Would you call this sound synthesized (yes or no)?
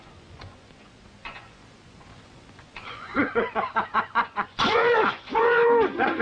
yes